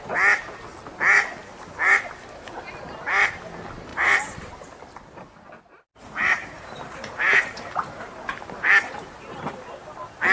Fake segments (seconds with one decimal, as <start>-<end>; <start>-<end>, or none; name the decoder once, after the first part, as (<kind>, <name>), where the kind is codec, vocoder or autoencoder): 3.9-4.5 (vocoder, BigVGAN v2); 5.9-8.7